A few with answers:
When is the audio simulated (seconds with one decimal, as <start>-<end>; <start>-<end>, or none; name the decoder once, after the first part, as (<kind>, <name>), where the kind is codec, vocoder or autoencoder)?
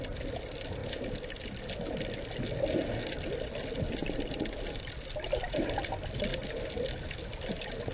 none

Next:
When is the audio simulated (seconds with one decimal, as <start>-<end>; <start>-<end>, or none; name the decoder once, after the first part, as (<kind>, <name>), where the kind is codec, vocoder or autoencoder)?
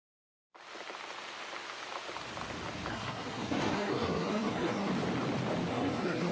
2.9-4.9 (codec, SNAC); 5.7-6.3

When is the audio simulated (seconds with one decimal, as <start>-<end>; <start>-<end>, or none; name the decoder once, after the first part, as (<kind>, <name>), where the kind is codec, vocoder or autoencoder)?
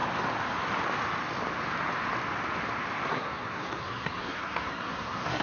3.1-5.4 (codec, SNAC)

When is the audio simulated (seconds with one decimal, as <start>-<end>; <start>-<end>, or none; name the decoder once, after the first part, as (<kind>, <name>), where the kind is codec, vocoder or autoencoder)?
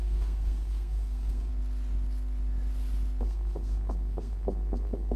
0.0-1.5 (codec, SNAC); 3.2-5.2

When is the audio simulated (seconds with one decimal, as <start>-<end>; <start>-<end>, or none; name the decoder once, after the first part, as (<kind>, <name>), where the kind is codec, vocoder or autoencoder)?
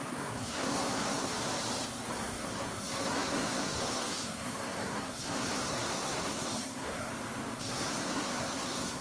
0.0-1.3 (codec, SNAC); 2.1-7.1; 7.6-9.0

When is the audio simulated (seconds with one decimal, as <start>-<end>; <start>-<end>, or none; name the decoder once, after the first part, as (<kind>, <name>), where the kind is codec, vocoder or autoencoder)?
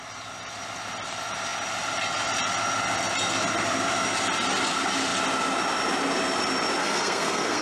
6.8-7.6 (codec, SNAC)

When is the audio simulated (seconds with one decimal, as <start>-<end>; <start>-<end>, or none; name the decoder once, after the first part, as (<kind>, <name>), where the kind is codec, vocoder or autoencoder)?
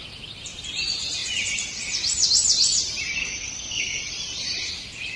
3.2-4.0 (codec, SNAC)